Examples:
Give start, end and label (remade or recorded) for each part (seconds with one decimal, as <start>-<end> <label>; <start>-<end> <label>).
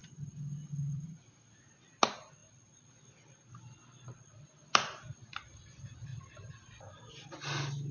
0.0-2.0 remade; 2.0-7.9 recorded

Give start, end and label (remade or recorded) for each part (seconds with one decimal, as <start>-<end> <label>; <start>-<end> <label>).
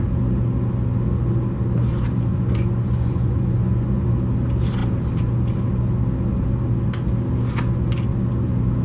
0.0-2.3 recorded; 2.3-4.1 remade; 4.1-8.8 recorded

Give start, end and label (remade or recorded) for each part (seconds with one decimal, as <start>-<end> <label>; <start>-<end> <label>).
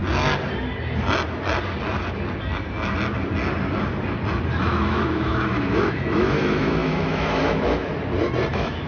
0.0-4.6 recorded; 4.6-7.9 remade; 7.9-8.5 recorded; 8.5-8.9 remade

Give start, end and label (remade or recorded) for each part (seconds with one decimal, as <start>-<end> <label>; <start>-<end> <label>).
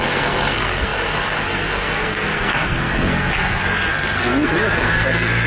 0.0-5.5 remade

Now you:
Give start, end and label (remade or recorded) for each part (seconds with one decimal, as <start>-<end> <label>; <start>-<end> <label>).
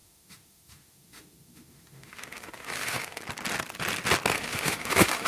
0.0-3.2 remade; 3.2-4.3 recorded; 4.3-5.3 remade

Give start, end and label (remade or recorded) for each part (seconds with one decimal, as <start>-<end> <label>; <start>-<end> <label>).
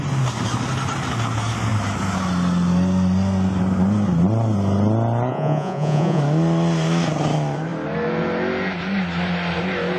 0.0-5.3 recorded; 5.3-6.2 remade; 6.2-10.0 recorded